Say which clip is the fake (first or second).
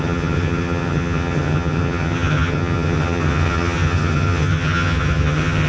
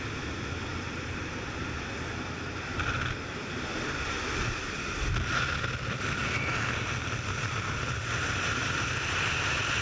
first